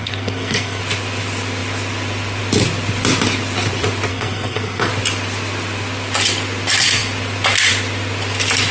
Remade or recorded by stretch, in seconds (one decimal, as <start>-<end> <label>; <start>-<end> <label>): 0.0-0.8 remade; 0.8-4.1 recorded; 4.1-4.9 remade; 4.9-8.7 recorded